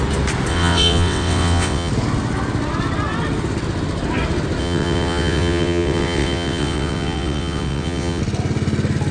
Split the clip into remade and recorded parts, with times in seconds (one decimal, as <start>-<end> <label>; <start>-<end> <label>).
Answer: 0.0-0.5 recorded; 0.5-1.9 remade; 1.9-4.6 recorded; 4.6-8.2 remade; 8.2-9.1 recorded